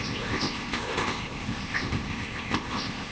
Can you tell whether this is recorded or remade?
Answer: remade